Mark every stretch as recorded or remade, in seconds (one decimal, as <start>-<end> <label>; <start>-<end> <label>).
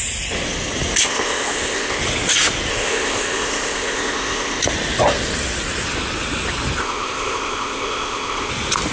0.0-1.0 recorded; 1.0-2.0 remade; 2.0-2.7 recorded; 2.7-4.6 remade; 4.6-6.8 recorded; 6.8-8.5 remade; 8.5-8.9 recorded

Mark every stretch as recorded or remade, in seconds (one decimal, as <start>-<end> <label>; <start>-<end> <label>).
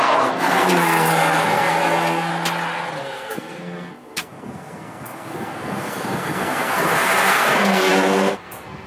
0.0-2.3 remade; 2.3-3.0 recorded; 3.0-8.9 remade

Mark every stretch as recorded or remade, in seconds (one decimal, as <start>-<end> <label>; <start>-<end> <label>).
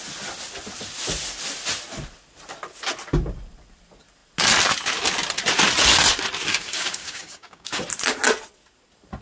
0.0-6.5 recorded; 6.5-7.8 remade; 7.8-9.2 recorded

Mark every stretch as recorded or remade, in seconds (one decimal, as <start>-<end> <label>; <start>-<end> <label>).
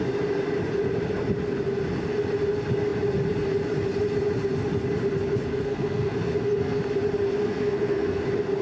0.0-5.5 recorded; 5.5-6.8 remade; 6.8-7.4 recorded; 7.4-8.2 remade; 8.2-8.6 recorded